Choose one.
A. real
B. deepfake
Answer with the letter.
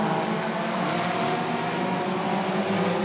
A